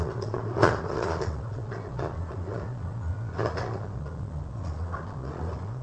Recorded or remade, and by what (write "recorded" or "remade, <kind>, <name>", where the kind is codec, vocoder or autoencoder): remade, vocoder, Vocos